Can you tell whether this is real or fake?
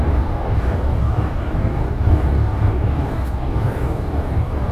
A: fake